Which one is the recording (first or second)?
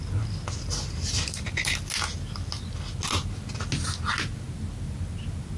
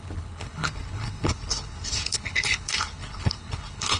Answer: first